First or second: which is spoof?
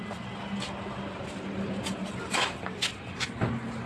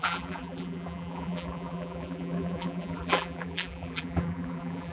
second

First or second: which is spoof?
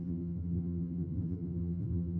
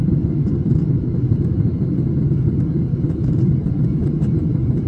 first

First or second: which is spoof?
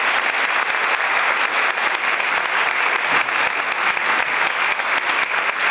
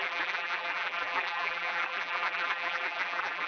second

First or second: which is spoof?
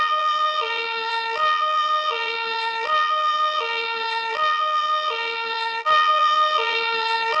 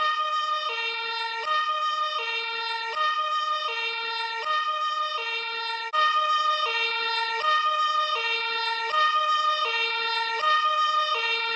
first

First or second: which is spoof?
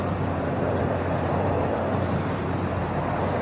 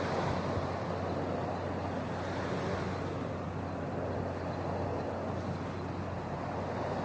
first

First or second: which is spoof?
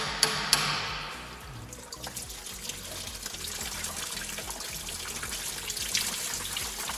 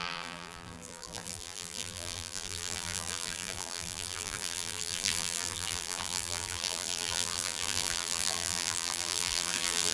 second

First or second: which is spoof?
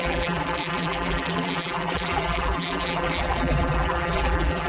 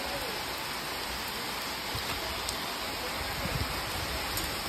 first